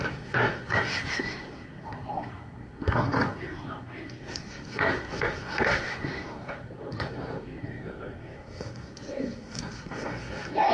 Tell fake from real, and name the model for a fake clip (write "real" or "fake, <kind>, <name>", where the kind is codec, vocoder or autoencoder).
fake, codec, SNAC